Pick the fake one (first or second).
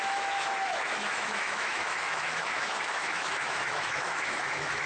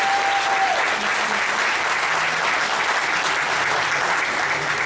first